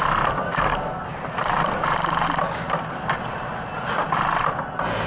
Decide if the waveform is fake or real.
real